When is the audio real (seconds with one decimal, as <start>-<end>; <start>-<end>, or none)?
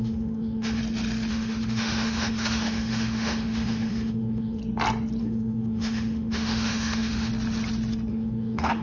0.8-1.3; 4.6-5.2; 7.3-8.1